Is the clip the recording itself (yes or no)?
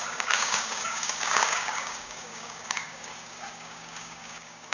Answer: no